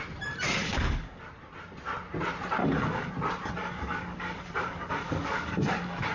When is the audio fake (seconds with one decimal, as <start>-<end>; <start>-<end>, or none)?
0.6-1.2; 2.6-3.1; 3.6-6.1